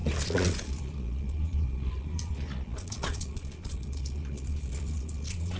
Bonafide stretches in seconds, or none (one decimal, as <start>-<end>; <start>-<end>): none